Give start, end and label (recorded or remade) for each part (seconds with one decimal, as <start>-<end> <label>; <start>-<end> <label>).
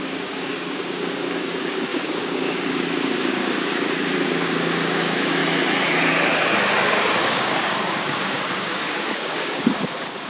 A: 0.0-5.4 remade; 5.4-6.9 recorded; 6.9-10.3 remade